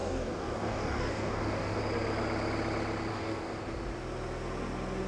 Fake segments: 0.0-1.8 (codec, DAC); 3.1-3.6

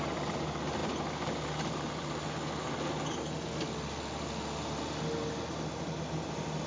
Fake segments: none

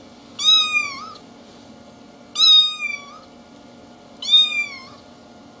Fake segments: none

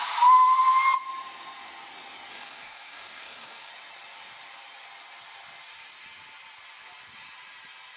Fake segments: 2.3-3.7 (codec, DAC)